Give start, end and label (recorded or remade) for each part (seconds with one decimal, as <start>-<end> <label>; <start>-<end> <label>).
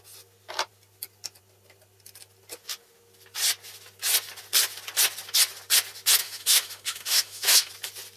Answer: 0.0-6.2 recorded; 6.2-7.7 remade; 7.7-8.2 recorded